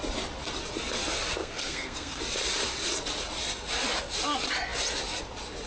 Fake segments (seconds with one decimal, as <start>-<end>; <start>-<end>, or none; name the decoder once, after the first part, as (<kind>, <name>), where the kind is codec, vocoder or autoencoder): 1.4-2.2 (codec, SNAC)